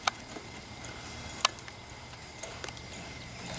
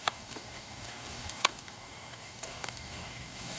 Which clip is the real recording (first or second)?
first